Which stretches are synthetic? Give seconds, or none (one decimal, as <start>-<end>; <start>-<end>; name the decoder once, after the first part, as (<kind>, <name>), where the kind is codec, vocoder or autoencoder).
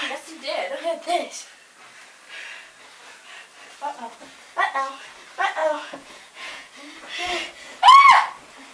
5.6-6.7 (vocoder, Vocos)